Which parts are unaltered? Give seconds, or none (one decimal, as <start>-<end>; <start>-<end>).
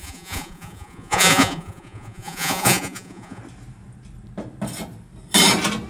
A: 3.4-5.9